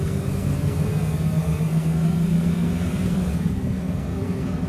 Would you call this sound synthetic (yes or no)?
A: yes